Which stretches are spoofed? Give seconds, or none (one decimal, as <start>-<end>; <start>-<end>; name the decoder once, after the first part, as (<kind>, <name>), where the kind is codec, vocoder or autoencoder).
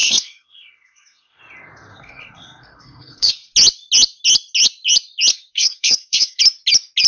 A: 0.0-1.4 (codec, SNAC); 1.9-3.3; 5.3-6.4